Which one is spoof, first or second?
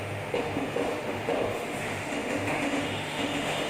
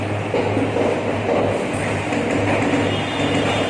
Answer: first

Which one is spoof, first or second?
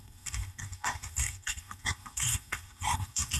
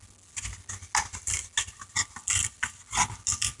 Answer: first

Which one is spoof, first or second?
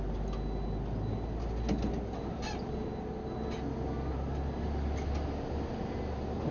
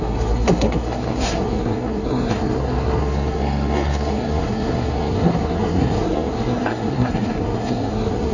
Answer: second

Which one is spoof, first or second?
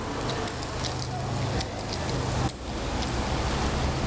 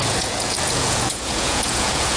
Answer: second